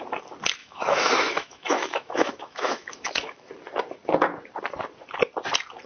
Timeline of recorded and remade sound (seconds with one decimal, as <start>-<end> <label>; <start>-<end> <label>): 0.0-0.6 recorded; 0.6-3.5 remade; 3.5-5.9 recorded

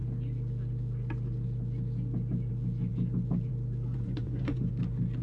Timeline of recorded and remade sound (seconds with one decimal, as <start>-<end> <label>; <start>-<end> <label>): 0.0-3.9 recorded; 3.9-4.7 remade; 4.7-5.2 recorded